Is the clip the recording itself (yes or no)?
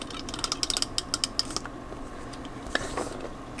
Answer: yes